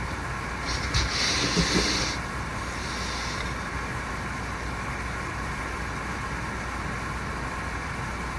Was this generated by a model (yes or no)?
no